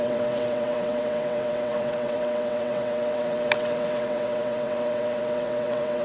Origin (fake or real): fake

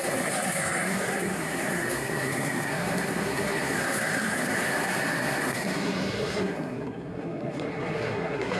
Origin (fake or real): fake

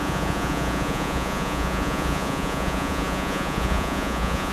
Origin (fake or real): fake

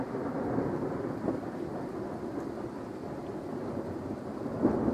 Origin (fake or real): real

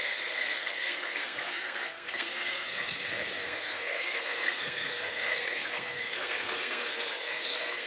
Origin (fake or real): fake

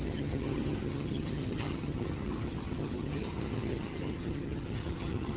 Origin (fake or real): fake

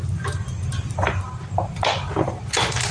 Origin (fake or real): real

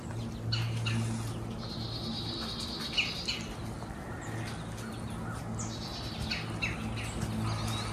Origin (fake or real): real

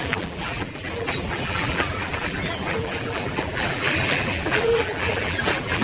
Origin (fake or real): fake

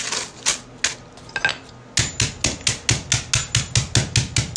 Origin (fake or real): real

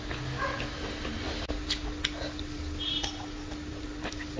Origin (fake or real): real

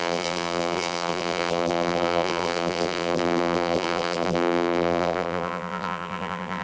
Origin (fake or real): fake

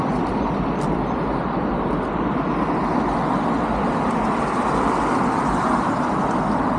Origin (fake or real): real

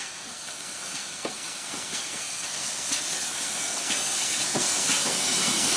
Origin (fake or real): fake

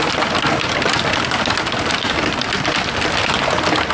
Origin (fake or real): real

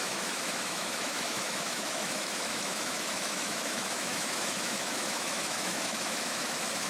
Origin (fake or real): fake